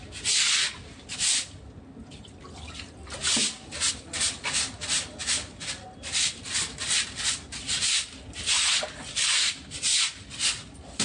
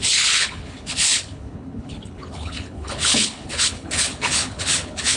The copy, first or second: second